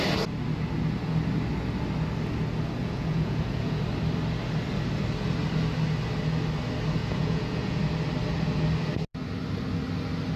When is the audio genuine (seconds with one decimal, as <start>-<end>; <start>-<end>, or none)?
0.0-2.8; 3.8-7.0; 7.8-10.4